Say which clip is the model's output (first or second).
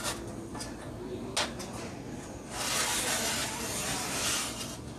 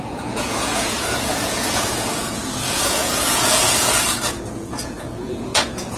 second